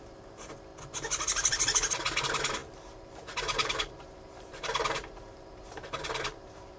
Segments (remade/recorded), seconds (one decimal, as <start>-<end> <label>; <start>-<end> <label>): 0.0-0.7 remade; 0.7-2.2 recorded; 2.2-6.8 remade